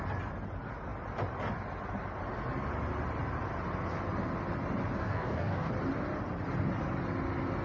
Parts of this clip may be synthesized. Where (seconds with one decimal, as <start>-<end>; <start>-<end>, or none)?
5.0-5.7